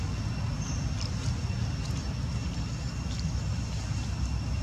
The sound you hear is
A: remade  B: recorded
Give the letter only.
B